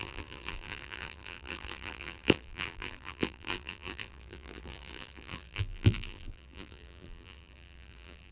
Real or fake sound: fake